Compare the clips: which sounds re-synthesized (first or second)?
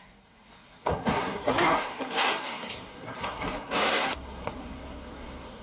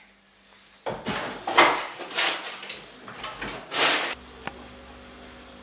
first